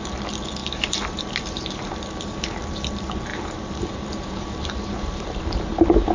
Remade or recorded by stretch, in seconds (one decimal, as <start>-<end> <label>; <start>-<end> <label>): 0.0-0.6 recorded; 0.6-2.0 remade; 2.0-3.3 recorded; 3.3-5.4 remade; 5.4-6.1 recorded